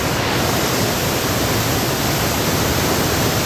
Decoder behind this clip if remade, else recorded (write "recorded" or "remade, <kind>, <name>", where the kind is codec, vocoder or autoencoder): recorded